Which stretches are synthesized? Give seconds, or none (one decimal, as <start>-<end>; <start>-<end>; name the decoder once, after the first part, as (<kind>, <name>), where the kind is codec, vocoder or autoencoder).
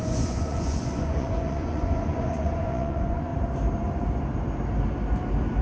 0.0-3.3 (vocoder, Vocos)